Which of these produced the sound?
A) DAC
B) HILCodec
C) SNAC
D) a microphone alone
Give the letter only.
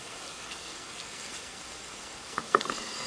C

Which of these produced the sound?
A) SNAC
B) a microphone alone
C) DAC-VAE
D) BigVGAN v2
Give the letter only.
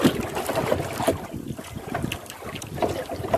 B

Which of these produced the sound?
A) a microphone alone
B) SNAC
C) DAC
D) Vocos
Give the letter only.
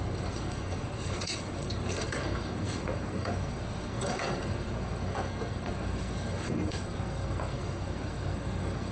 B